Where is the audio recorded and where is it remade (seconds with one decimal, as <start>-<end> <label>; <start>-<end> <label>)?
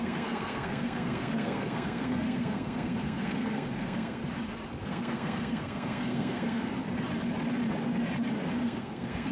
0.0-4.2 remade; 4.2-4.8 recorded; 4.8-6.7 remade; 6.7-8.5 recorded; 8.5-9.3 remade